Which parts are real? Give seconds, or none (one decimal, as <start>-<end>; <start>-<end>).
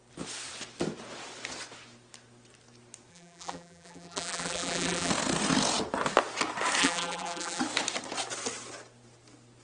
0.0-3.1; 5.1-6.8; 7.6-9.6